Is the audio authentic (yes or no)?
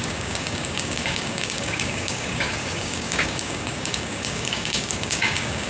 no